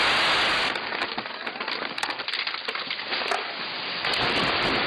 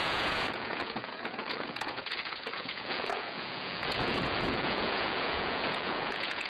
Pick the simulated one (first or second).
second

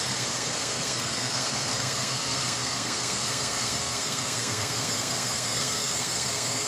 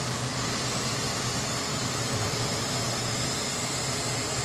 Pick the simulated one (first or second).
first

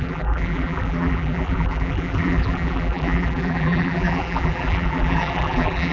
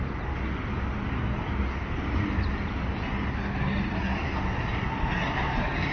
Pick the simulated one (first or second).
first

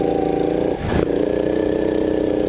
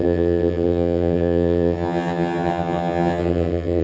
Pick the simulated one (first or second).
second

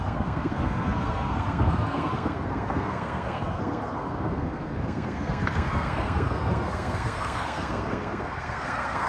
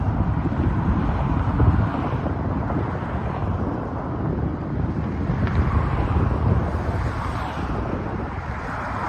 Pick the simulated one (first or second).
first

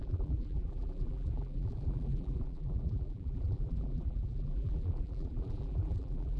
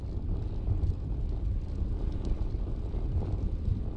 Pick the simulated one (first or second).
first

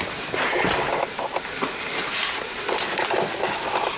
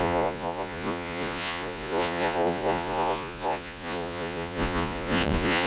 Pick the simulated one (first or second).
second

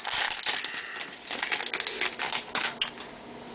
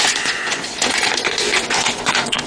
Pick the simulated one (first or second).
second